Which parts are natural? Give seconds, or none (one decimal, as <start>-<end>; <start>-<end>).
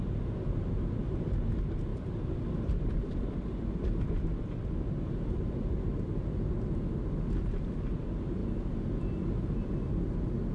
0.0-1.9; 6.5-10.5